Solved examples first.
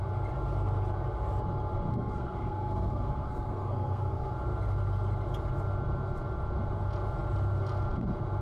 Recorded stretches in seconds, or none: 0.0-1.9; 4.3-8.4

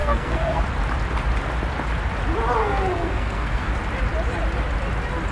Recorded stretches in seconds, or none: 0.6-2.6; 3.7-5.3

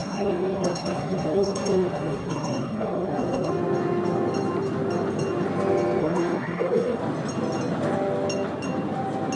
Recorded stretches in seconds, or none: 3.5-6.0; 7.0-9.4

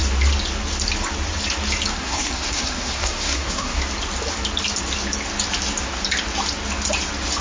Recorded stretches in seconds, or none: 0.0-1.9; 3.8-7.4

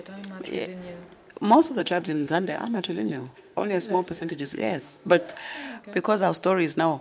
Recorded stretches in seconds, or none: 0.0-1.8; 5.7-7.0

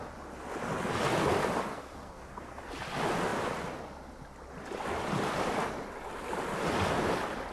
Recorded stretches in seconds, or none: 0.0-1.7; 2.7-7.5